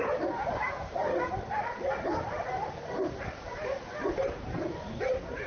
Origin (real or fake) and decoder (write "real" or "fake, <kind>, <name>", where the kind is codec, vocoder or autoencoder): fake, vocoder, BigVGAN v2